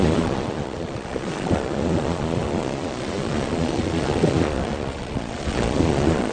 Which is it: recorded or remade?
remade